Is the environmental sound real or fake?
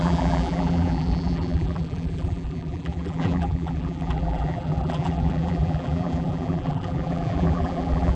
fake